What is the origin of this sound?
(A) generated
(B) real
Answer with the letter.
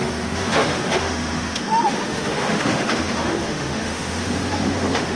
A